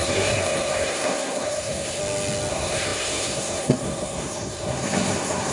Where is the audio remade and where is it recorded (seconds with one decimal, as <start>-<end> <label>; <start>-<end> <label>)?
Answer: 0.0-2.0 remade; 2.0-2.5 recorded; 2.5-5.5 remade